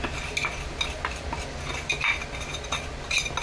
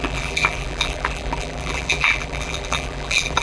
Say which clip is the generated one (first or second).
second